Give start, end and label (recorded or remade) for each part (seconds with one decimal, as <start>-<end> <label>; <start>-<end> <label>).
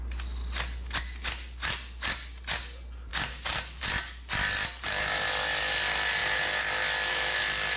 0.0-7.8 recorded